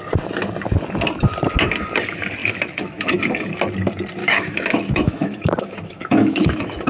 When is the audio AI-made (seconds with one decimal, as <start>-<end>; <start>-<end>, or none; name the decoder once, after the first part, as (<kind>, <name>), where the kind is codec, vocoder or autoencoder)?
2.4-3.2 (autoencoder, DAC-VAE); 4.2-6.9